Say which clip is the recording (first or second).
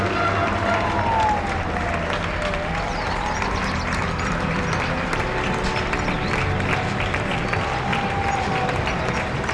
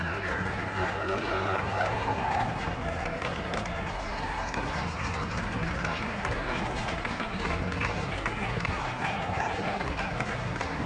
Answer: first